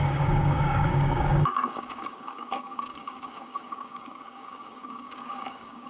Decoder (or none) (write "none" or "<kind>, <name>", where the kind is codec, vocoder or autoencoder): codec, DAC